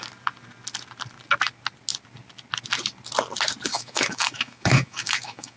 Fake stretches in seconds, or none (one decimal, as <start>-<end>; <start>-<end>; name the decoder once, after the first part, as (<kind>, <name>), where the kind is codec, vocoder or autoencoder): 3.7-5.6 (autoencoder, DAC-VAE)